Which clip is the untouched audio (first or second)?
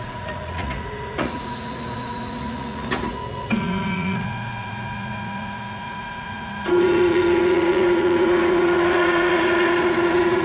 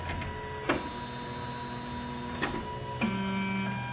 second